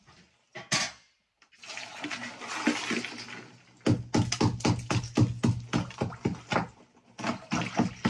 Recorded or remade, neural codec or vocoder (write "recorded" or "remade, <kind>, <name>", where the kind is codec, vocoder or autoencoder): recorded